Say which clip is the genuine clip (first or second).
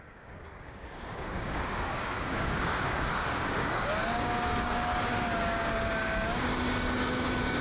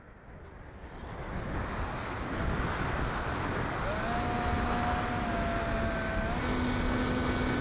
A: second